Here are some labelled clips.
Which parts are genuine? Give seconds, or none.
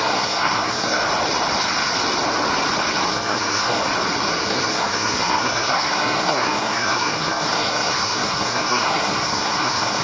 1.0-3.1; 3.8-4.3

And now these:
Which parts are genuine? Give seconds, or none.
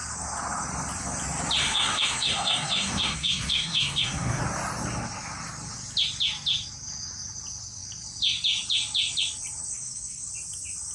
0.0-1.6; 4.4-9.7; 10.3-10.9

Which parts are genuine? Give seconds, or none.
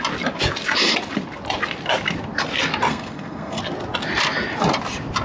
0.0-2.9; 3.6-5.2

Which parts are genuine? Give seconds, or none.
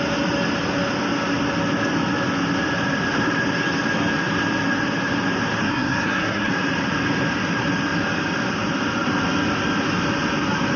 0.0-5.6; 6.5-10.8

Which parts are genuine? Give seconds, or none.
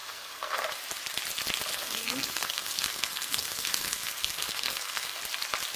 0.7-1.7; 5.2-5.8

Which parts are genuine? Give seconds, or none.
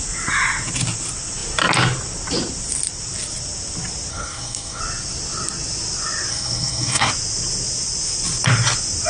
0.0-4.1; 4.8-6.3; 7.1-9.1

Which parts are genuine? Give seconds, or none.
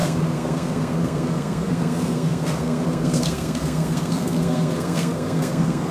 none